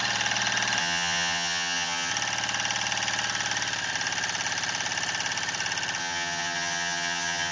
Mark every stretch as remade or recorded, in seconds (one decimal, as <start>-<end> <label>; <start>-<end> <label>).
0.0-0.8 recorded; 0.8-2.1 remade; 2.1-6.0 recorded; 6.0-7.5 remade